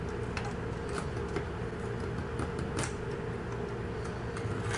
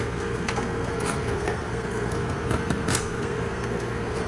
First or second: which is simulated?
second